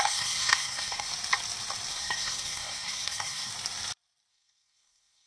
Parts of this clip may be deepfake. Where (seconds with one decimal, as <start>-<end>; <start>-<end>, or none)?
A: 0.0-1.1; 1.9-3.5; 4.3-5.3